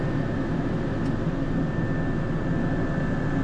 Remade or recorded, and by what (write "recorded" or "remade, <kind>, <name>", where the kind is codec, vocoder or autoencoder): recorded